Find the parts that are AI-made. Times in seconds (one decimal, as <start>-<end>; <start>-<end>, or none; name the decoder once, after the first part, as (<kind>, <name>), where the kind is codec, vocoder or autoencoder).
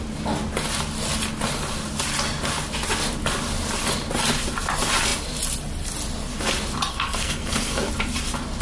6.9-7.9 (codec, SNAC)